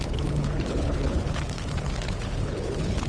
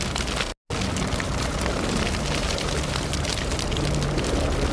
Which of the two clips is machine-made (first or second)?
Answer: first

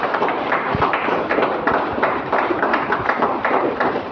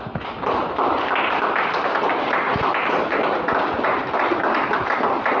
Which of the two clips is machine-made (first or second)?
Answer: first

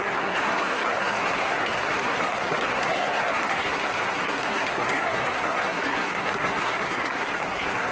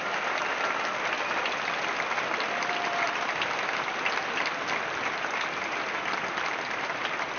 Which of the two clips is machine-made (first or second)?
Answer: first